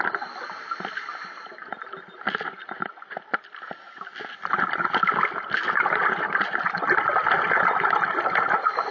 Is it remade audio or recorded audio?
recorded